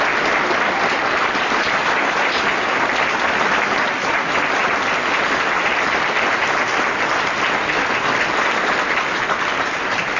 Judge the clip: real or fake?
real